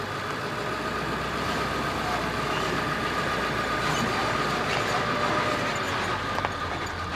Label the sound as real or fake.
real